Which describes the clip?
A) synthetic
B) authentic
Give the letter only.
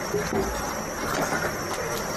B